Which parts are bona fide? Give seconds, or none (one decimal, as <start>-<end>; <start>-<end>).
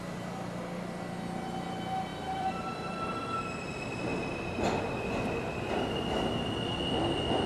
0.0-2.1; 2.9-7.5